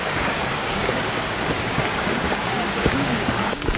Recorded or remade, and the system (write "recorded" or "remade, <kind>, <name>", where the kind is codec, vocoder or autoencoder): remade, codec, DAC